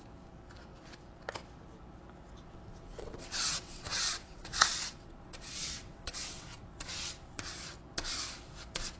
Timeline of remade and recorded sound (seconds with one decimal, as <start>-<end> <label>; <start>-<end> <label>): 0.0-2.7 recorded; 2.7-6.9 remade; 6.9-9.0 recorded

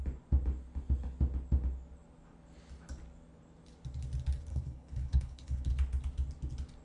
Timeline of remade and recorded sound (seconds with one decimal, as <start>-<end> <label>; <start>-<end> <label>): 0.0-4.5 recorded; 4.5-5.7 remade; 5.7-6.8 recorded

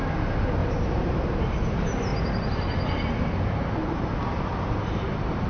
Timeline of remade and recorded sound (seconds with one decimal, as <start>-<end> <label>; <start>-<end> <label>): 0.0-0.6 recorded; 0.6-1.2 remade; 1.2-2.1 recorded; 2.1-5.5 remade

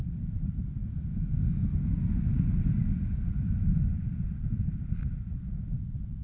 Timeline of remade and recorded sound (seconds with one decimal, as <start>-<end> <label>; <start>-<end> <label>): 0.0-0.8 recorded; 0.8-1.7 remade; 1.7-6.2 recorded

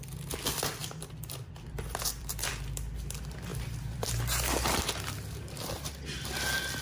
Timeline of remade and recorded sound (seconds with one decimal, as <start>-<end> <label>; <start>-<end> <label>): 0.0-0.8 recorded; 0.8-2.5 remade; 2.5-3.5 recorded; 3.5-4.1 remade; 4.1-6.8 recorded